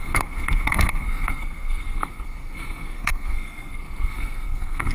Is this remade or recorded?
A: remade